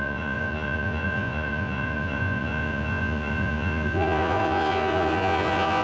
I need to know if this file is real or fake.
fake